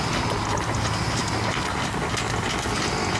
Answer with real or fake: real